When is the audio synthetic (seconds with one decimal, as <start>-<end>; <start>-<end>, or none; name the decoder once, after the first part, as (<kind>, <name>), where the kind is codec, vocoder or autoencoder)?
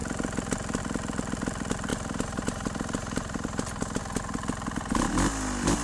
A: 1.9-4.0 (vocoder, BigVGAN v2)